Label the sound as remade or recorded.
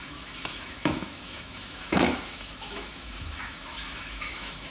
remade